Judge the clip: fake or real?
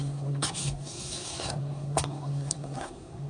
fake